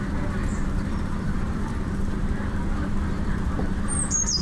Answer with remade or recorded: remade